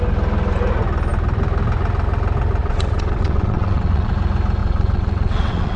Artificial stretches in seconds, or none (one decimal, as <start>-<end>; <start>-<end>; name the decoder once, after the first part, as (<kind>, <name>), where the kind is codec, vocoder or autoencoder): 2.6-4.1 (vocoder, WaveNeXt); 4.6-5.8